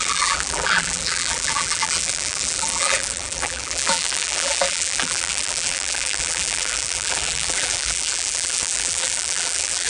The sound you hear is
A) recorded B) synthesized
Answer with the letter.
B